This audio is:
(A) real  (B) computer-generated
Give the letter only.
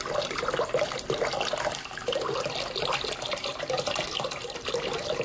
A